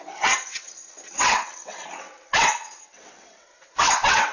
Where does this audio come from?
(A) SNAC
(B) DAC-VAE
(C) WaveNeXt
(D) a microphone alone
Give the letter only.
C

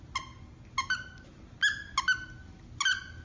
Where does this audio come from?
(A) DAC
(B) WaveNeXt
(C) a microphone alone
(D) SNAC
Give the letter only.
C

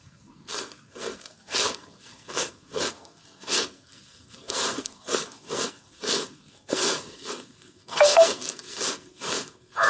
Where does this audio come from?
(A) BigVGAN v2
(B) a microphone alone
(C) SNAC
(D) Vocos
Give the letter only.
C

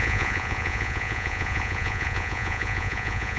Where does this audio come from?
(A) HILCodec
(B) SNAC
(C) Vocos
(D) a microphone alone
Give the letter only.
C